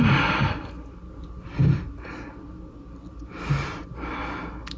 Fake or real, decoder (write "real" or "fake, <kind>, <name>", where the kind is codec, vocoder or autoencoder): real